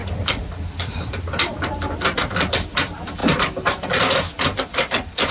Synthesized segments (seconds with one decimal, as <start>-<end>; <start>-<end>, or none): 0.0-1.1; 3.2-5.3